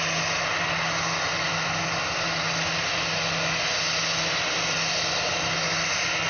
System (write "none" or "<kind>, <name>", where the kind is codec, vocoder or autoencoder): none